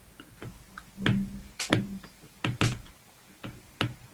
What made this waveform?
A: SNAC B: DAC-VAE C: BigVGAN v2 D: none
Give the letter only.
D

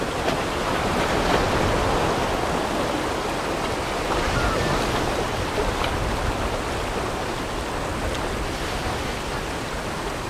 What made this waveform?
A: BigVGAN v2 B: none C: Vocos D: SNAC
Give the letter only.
B